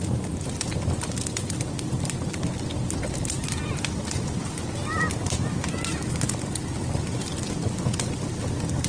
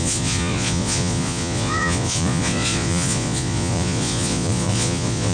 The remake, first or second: second